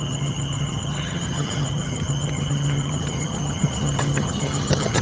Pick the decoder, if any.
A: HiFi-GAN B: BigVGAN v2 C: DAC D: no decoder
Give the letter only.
A